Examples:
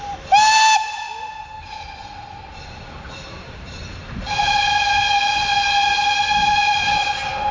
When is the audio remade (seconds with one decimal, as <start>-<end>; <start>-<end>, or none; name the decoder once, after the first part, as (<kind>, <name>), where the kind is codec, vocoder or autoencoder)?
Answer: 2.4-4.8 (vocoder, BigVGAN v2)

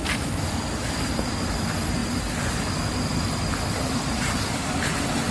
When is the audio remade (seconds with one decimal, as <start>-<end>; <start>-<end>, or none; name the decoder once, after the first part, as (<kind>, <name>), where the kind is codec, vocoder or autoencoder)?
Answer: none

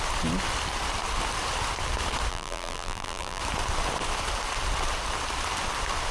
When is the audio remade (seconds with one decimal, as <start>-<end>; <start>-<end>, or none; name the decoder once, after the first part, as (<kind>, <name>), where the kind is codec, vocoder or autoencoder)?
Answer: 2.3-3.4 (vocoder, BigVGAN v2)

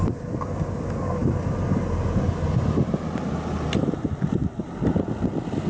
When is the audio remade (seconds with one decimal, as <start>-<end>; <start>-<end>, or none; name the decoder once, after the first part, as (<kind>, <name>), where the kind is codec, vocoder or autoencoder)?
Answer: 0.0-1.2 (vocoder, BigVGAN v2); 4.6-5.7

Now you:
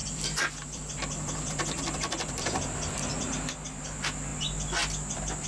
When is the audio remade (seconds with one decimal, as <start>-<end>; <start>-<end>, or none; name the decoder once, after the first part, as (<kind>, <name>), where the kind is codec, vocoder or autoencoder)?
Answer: 0.0-3.3 (vocoder, BigVGAN v2)

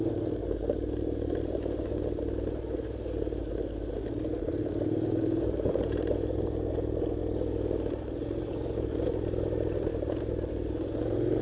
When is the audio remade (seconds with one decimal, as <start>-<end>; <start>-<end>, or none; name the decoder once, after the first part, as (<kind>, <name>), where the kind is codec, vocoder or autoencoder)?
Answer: 0.0-7.2 (vocoder, BigVGAN v2); 7.9-11.4

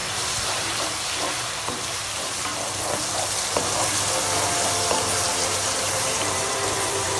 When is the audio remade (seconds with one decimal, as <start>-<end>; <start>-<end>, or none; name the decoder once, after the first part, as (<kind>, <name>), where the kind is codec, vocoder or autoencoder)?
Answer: 0.0-2.5 (vocoder, BigVGAN v2); 4.8-7.2